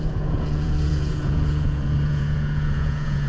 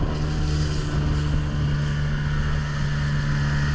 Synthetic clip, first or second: first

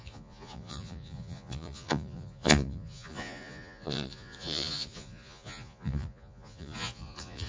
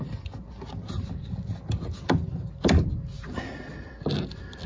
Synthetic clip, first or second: first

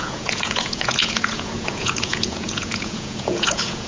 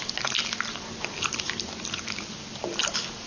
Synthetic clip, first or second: first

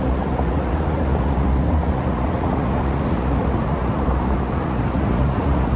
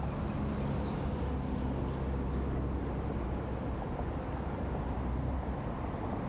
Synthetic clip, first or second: first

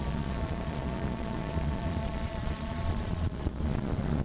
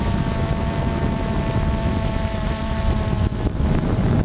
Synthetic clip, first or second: first